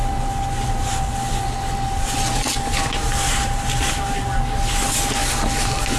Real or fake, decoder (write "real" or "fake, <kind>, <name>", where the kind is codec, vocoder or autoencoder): real